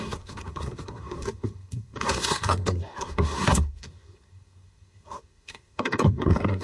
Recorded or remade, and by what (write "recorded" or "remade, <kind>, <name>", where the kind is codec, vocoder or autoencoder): remade, codec, SNAC